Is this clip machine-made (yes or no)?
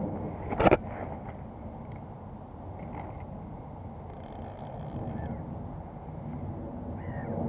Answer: no